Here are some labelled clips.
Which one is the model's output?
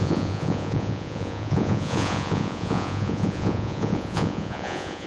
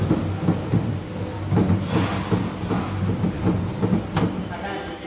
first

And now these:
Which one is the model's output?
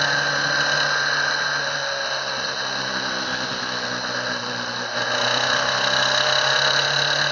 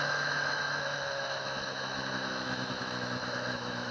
second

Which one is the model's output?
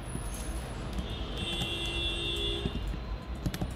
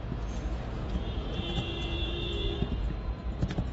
second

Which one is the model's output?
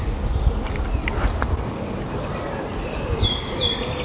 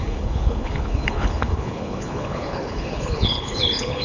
second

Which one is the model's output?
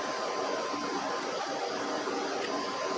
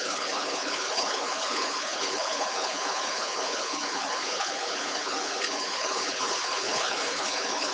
second